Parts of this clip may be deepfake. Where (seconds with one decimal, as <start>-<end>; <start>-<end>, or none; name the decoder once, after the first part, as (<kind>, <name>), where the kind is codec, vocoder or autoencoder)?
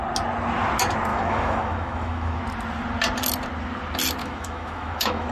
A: 1.1-2.4 (autoencoder, DAC-VAE); 4.2-5.3